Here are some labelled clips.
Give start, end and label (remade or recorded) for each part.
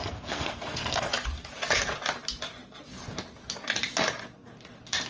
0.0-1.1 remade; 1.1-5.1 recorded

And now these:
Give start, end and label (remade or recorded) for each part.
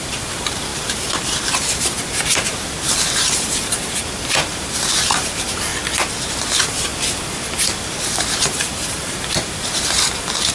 0.0-5.7 remade; 5.7-6.3 recorded; 6.3-6.9 remade; 6.9-8.0 recorded; 8.0-10.5 remade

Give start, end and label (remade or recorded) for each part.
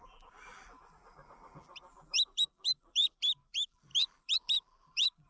0.0-5.3 remade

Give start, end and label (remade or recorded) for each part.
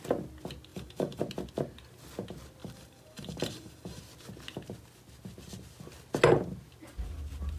0.0-0.7 recorded; 0.7-1.2 remade; 1.2-2.6 recorded; 2.6-4.0 remade; 4.0-7.6 recorded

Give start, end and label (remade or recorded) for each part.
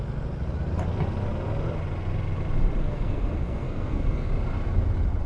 0.0-2.8 recorded; 2.8-4.3 remade; 4.3-5.3 recorded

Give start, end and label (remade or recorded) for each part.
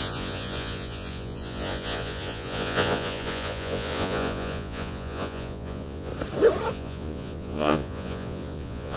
0.0-6.1 remade; 6.1-6.7 recorded; 6.7-9.0 remade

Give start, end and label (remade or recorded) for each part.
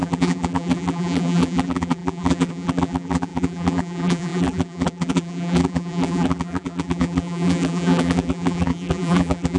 0.0-9.6 remade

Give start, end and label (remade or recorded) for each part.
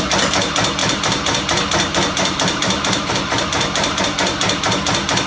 0.0-0.8 recorded; 0.8-4.0 remade; 4.0-5.3 recorded